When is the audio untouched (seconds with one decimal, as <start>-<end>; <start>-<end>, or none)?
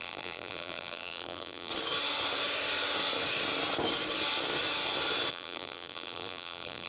1.7-5.3